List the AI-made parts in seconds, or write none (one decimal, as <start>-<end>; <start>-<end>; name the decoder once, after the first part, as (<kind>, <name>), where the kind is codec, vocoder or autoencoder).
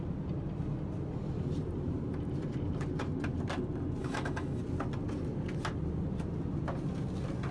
4.0-4.6 (autoencoder, DAC-VAE)